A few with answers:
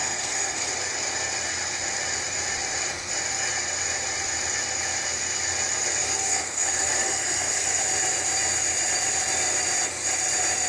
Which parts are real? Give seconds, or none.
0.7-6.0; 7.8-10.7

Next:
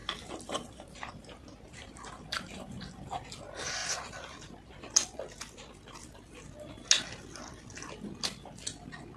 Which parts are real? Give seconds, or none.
2.7-9.2

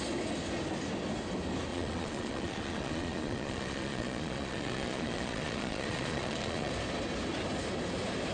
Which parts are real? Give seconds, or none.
0.0-1.7; 6.7-8.3

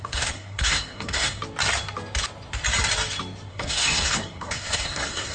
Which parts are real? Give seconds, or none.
1.4-3.5

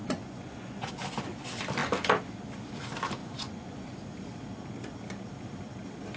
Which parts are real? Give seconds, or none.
0.9-3.2; 3.9-6.2